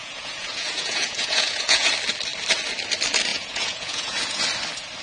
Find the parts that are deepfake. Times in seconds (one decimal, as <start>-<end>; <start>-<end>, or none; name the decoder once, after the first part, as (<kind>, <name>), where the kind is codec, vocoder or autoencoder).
0.0-1.9 (vocoder, Vocos); 3.3-4.4